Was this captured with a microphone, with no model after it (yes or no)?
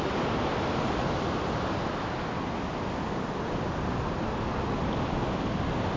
yes